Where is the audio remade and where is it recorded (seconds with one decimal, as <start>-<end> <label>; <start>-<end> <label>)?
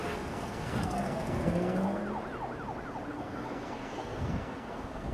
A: 0.0-2.0 remade; 2.0-3.1 recorded; 3.1-5.1 remade